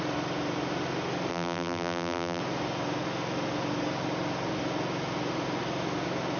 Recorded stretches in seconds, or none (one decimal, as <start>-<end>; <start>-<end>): 0.0-1.3; 2.4-6.4